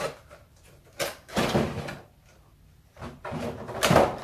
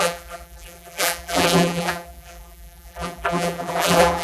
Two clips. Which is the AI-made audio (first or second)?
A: second